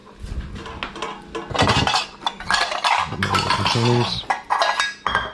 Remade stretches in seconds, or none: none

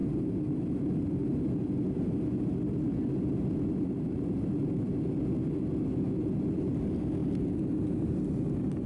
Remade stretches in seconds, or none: none

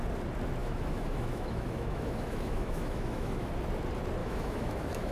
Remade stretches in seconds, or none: 0.6-3.5 (autoencoder, DAC-VAE); 4.2-5.1

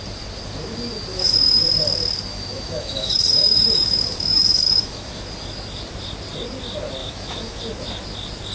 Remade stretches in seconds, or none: 1.1-1.6 (autoencoder, DAC-VAE); 2.3-5.1; 7.0-7.6

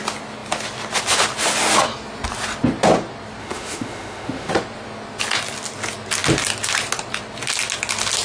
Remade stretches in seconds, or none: 3.4-4.5 (autoencoder, DAC-VAE)

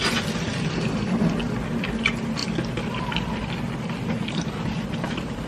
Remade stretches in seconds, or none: none

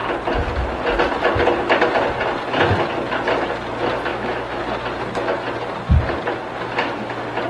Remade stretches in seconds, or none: 4.1-4.6 (autoencoder, DAC-VAE)